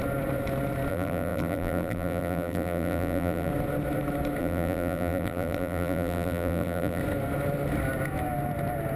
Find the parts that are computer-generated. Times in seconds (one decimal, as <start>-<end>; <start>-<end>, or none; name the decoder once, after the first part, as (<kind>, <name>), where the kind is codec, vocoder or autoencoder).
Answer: 0.9-3.5 (vocoder, BigVGAN v2); 4.4-7.0